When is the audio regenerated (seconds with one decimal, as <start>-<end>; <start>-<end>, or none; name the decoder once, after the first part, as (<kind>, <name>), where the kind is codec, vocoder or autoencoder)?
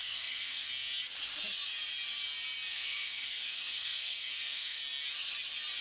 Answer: 0.0-0.7 (codec, SNAC); 2.7-4.8